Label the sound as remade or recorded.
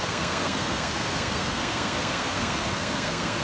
remade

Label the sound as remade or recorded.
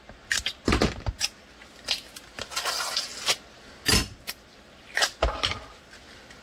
recorded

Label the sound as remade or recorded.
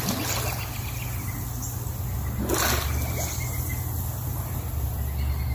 recorded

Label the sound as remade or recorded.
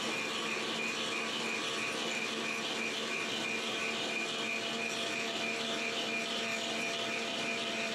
recorded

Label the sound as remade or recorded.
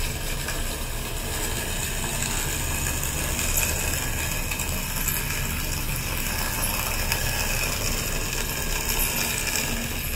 recorded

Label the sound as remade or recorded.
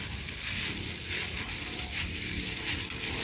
recorded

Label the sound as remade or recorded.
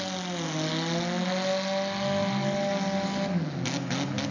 recorded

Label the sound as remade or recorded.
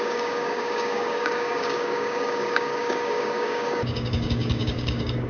remade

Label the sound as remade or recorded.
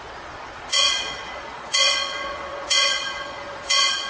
remade